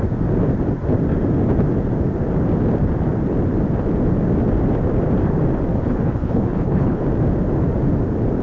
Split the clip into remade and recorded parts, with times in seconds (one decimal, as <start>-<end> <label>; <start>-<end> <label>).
0.0-5.7 recorded; 5.7-7.0 remade; 7.0-8.4 recorded